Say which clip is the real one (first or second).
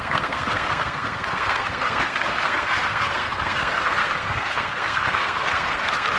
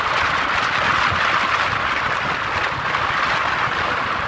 second